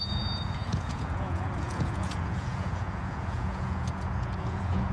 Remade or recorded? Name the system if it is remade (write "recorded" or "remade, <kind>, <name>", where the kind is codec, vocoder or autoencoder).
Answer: remade, vocoder, Vocos